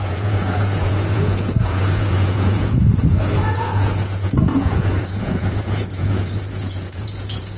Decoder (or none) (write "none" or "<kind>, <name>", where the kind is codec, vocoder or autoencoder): vocoder, Vocos